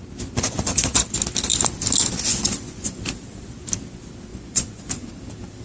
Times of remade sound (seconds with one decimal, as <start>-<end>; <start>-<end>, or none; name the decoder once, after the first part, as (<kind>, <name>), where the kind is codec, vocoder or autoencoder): 2.3-3.0 (vocoder, Vocos); 4.3-5.1